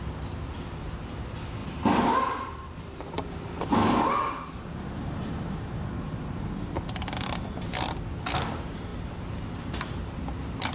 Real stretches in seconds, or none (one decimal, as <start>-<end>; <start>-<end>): 0.0-1.6; 6.5-10.7